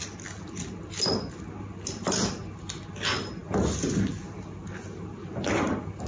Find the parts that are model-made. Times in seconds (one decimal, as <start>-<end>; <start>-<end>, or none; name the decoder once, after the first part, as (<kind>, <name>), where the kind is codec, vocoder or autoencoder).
none